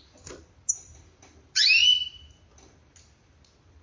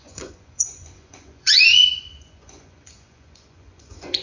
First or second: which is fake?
second